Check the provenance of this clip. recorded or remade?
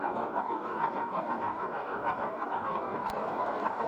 remade